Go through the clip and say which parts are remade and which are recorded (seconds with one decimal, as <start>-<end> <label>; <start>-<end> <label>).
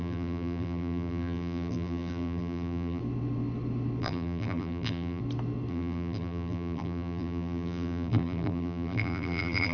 0.0-3.0 remade; 3.0-4.0 recorded; 4.0-5.2 remade; 5.2-5.7 recorded; 5.7-9.7 remade